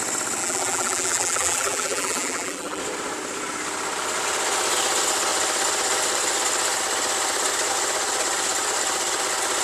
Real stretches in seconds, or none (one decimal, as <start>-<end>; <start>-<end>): 0.0-0.4; 2.8-9.6